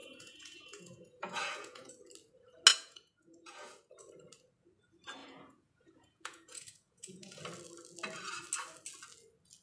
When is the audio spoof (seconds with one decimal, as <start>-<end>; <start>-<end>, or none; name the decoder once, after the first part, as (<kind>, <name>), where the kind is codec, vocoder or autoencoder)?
0.0-1.9 (vocoder, Vocos); 2.7-4.0; 5.2-7.4